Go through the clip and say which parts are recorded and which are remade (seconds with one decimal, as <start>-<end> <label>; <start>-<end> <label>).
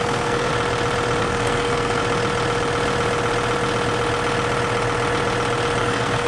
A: 0.0-0.5 remade; 0.5-1.2 recorded; 1.2-2.0 remade; 2.0-5.8 recorded; 5.8-6.3 remade